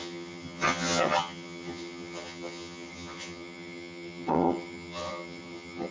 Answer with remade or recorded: remade